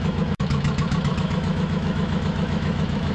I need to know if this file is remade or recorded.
remade